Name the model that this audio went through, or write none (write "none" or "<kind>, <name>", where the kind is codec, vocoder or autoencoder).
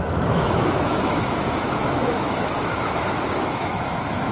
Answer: autoencoder, DAC-VAE